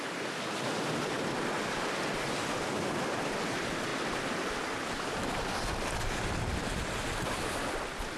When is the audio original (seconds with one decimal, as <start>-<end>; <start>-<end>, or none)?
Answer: 0.0-8.2